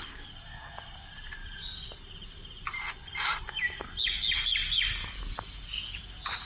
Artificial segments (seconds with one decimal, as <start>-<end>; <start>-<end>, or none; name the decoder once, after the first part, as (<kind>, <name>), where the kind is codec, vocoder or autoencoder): 5.0-6.0 (vocoder, Vocos)